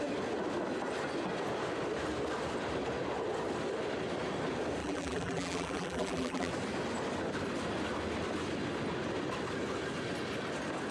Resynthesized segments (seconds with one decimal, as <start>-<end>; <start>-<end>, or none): 4.8-6.5